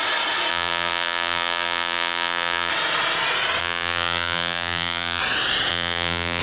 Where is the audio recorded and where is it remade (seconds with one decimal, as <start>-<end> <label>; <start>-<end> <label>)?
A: 0.0-0.5 recorded; 0.5-2.7 remade; 2.7-3.6 recorded; 3.6-5.2 remade; 5.2-5.7 recorded; 5.7-6.4 remade